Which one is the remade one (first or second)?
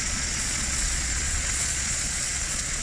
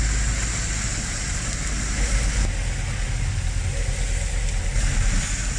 first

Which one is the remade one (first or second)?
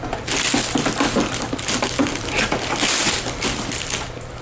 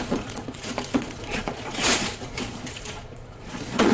second